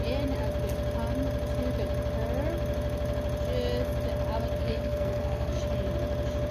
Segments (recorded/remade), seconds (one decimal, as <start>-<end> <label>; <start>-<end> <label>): 0.0-4.6 recorded; 4.6-5.6 remade; 5.6-6.5 recorded